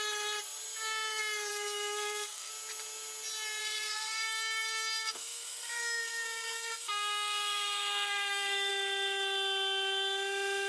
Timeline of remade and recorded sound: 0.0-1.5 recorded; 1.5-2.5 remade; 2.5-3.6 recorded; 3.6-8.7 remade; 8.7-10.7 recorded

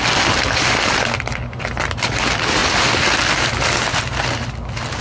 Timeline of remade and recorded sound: 0.0-5.0 recorded

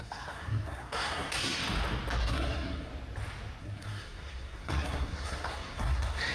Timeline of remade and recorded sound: 0.0-1.6 remade; 1.6-2.2 recorded; 2.2-2.9 remade; 2.9-3.6 recorded; 3.6-6.3 remade

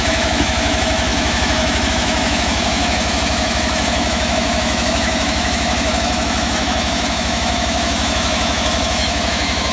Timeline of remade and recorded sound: 0.0-9.7 remade

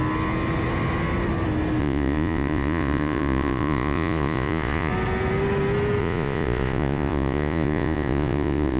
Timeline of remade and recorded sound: 0.0-1.8 recorded; 1.8-4.9 remade; 4.9-6.0 recorded; 6.0-8.8 remade

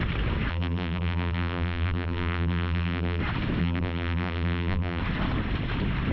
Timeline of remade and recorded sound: 0.0-0.5 recorded; 0.5-3.2 remade; 3.2-3.6 recorded; 3.6-5.0 remade; 5.0-6.1 recorded

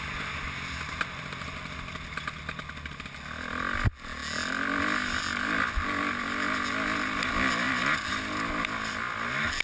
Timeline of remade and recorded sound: 0.0-9.6 recorded

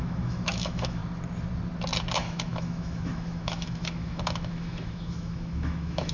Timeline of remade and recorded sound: 0.0-1.0 remade; 1.0-2.1 recorded; 2.1-6.1 remade